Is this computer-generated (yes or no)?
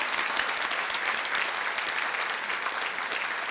no